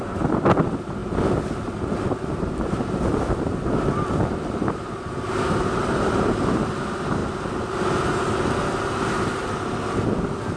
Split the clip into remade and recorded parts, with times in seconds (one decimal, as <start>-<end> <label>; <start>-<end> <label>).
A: 0.0-10.6 recorded